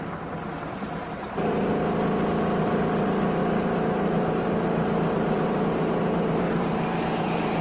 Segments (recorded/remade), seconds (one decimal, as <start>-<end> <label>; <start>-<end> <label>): 0.0-3.4 recorded; 3.4-7.6 remade